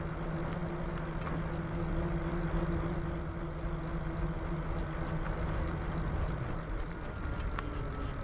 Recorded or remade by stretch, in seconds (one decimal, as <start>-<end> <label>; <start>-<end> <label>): 0.0-8.2 recorded